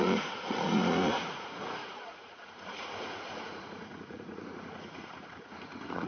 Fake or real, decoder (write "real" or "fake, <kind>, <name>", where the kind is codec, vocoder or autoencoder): fake, vocoder, Vocos